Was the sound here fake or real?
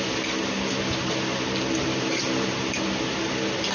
real